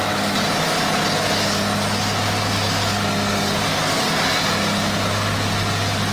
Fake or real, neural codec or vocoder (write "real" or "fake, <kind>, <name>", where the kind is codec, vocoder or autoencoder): real